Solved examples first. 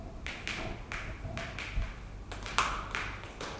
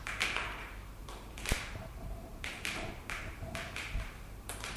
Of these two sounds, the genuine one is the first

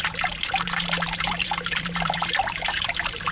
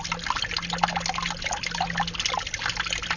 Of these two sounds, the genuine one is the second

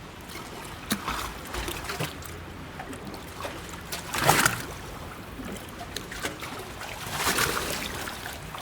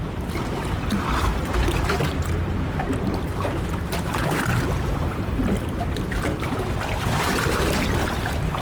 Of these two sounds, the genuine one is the first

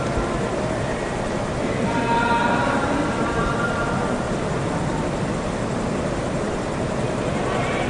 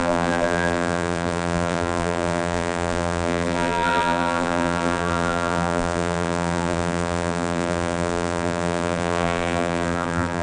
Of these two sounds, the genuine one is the first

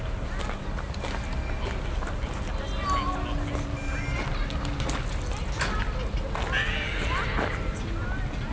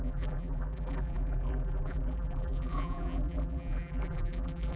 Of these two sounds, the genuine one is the first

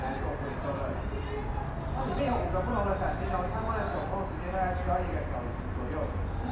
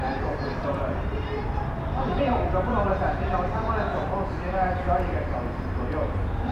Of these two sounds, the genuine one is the first